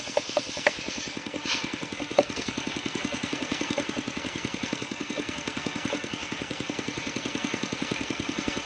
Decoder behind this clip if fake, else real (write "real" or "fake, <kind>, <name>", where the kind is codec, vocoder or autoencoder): fake, codec, SNAC